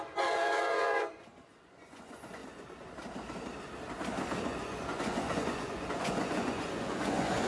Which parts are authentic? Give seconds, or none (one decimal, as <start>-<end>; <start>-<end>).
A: 2.4-4.4